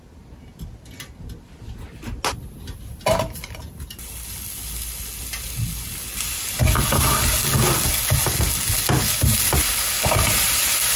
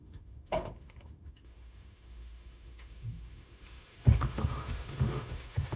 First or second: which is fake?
second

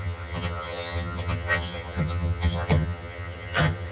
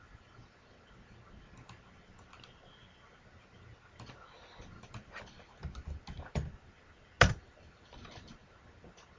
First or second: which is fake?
first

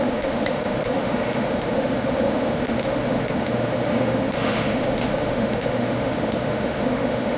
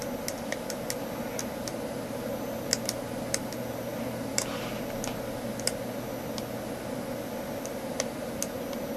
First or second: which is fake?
first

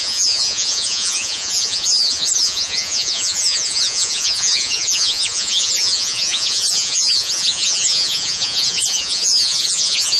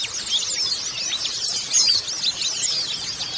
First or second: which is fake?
first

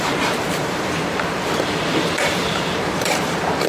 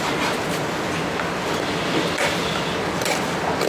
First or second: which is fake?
first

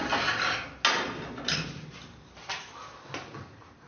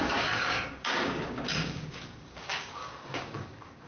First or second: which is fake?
second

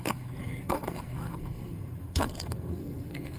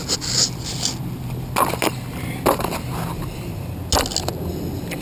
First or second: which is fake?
first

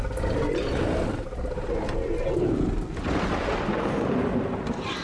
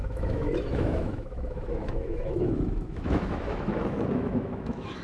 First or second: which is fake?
second